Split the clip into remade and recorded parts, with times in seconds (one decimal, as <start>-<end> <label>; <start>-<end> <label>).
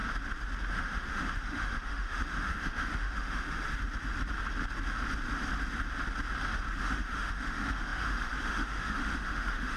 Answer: 0.0-0.7 recorded; 0.7-3.7 remade; 3.7-6.8 recorded; 6.8-9.8 remade